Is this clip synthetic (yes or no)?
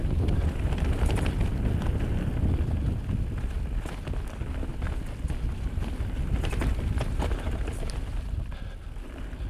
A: no